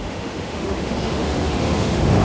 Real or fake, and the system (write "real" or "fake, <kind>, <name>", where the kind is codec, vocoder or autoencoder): fake, autoencoder, DAC-VAE